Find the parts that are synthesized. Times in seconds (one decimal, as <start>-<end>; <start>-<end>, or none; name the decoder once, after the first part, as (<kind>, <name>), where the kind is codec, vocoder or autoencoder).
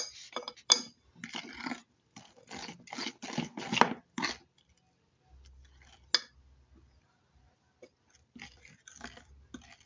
none